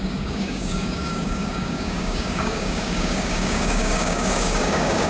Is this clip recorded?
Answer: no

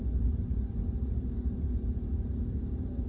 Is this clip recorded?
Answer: no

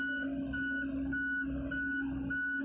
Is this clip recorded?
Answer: yes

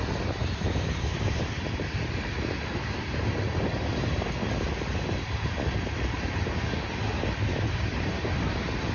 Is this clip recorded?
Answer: yes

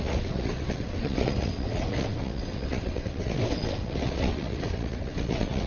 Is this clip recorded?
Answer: no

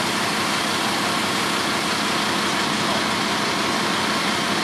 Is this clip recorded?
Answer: yes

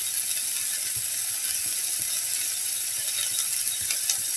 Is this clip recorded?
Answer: yes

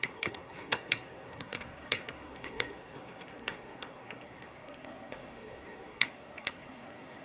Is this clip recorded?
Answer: no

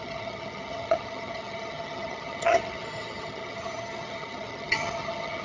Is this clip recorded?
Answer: no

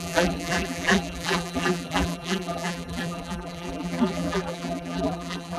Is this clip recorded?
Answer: no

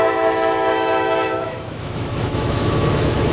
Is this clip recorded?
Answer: no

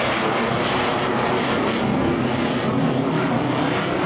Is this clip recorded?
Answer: yes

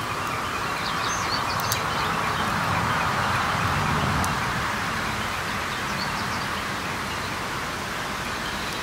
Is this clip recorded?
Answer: yes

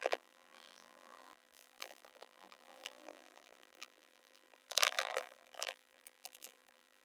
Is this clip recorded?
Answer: no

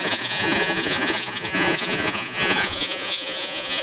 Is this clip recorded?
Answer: no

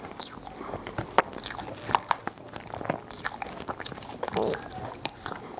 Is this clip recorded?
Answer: yes